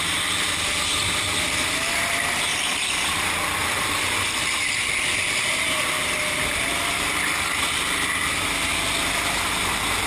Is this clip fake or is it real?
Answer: real